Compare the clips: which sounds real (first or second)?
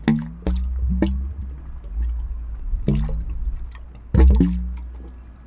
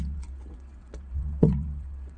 first